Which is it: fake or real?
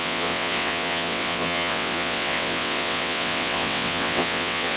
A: fake